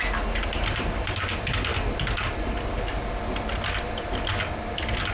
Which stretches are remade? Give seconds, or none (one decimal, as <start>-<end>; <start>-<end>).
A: none